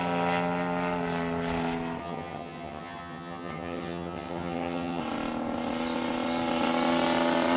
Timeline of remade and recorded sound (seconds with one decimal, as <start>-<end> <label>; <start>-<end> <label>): 0.0-2.0 recorded; 2.0-5.0 remade; 5.0-7.6 recorded